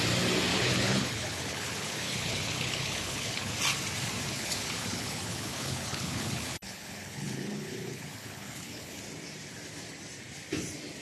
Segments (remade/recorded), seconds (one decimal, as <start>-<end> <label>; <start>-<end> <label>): 0.0-0.5 recorded; 0.5-3.5 remade; 3.5-4.3 recorded; 4.3-9.0 remade; 9.0-11.0 recorded